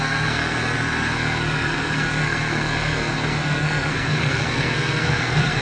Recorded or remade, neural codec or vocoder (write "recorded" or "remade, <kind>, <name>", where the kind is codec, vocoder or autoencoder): remade, codec, SNAC